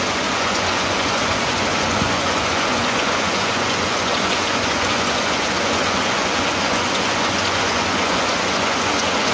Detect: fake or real fake